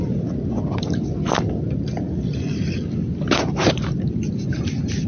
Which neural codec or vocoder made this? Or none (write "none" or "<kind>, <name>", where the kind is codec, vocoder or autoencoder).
none